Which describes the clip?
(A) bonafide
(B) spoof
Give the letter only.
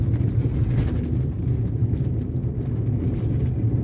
A